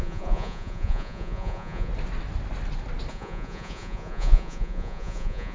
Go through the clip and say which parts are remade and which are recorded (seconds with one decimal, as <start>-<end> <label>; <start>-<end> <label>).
0.0-1.9 remade; 1.9-3.1 recorded; 3.1-5.5 remade